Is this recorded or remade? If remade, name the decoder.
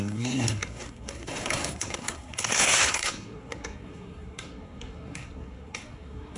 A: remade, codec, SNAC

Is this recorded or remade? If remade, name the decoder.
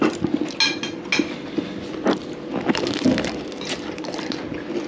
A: recorded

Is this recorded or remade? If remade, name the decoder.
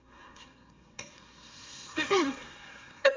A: remade, codec, SNAC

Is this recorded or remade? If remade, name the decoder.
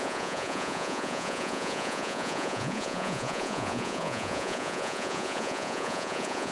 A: remade, vocoder, Vocos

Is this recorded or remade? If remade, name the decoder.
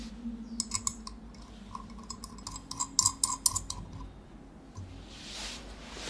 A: recorded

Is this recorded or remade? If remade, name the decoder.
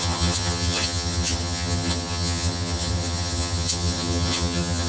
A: remade, vocoder, HiFi-GAN